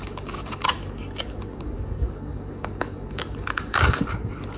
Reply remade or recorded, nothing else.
remade